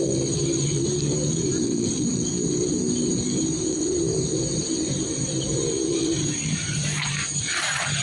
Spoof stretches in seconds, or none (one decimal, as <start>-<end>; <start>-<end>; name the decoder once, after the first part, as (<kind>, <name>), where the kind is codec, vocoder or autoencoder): 0.0-8.0 (vocoder, BigVGAN v2)